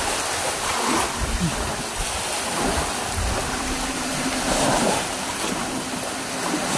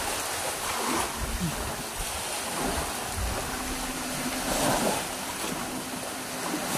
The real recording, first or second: second